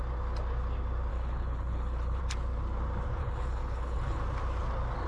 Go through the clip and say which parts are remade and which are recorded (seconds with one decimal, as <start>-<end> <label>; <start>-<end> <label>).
0.0-1.1 recorded; 1.1-2.2 remade; 2.2-3.2 recorded; 3.2-4.2 remade; 4.2-5.1 recorded

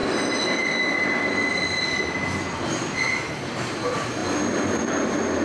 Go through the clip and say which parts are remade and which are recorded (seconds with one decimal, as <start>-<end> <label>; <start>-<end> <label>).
0.0-5.4 recorded

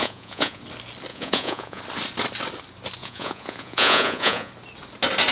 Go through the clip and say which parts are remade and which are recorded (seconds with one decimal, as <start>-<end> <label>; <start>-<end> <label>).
0.0-0.6 remade; 0.6-1.1 recorded; 1.1-1.8 remade; 1.8-3.0 recorded; 3.0-4.5 remade; 4.5-5.3 recorded

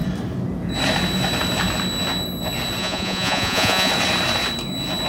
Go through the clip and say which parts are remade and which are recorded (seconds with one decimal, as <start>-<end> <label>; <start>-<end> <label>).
0.0-2.8 recorded; 2.8-3.9 remade; 3.9-5.1 recorded